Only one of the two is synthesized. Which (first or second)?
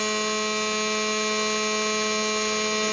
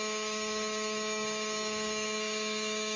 second